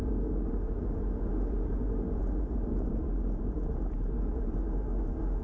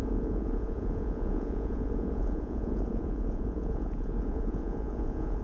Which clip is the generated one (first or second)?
second